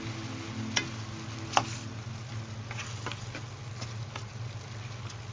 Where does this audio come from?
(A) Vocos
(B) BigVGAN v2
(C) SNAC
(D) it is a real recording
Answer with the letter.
D